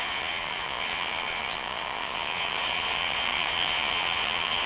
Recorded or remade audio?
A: remade